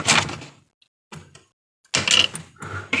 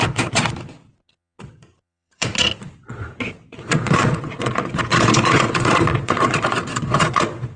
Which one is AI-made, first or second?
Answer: second